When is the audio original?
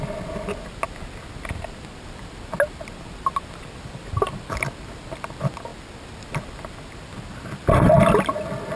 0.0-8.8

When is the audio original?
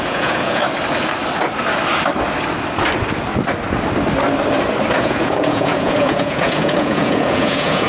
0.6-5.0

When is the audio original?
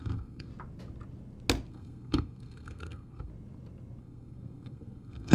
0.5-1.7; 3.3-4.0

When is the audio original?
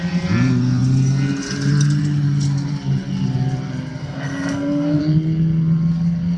0.0-4.0; 5.0-6.4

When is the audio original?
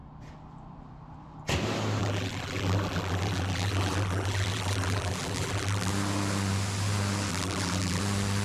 0.0-2.0; 5.9-7.3; 8.0-8.4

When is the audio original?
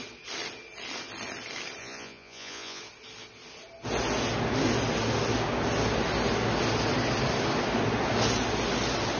0.0-1.8; 2.8-9.2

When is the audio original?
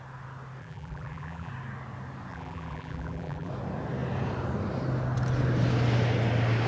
0.0-0.6; 1.5-2.3; 3.5-6.7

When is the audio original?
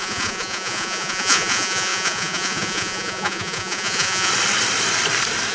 4.3-5.5